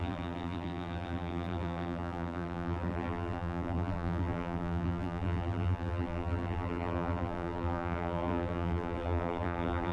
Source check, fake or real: fake